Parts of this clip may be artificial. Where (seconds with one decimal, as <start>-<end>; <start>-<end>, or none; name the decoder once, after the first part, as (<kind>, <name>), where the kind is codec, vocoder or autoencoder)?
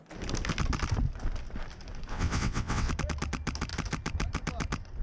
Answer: 2.1-2.9 (vocoder, WaveNeXt)